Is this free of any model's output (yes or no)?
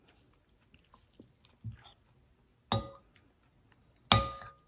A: yes